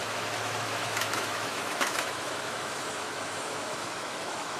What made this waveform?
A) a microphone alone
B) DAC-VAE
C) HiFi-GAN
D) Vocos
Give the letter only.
B